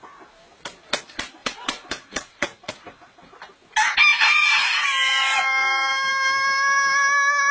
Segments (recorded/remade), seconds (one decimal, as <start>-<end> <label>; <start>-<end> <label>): 0.0-1.4 recorded; 1.4-2.7 remade; 2.7-7.5 recorded